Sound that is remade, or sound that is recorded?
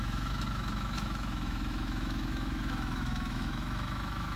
remade